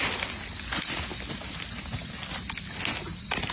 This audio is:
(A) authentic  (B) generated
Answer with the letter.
A